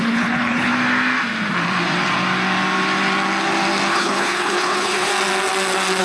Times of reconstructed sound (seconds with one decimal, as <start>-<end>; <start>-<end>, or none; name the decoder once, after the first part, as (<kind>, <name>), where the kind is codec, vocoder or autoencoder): 0.0-0.7 (codec, HILCodec); 3.9-5.1